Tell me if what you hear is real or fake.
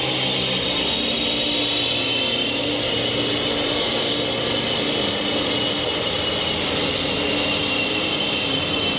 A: real